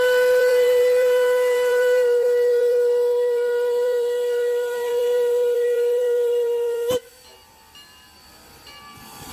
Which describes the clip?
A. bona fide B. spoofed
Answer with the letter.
B